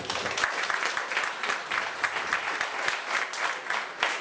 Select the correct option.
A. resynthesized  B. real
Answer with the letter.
B